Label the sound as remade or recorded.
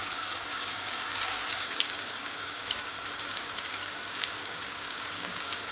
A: remade